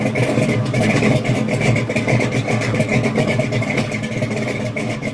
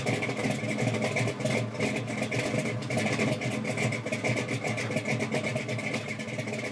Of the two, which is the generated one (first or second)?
first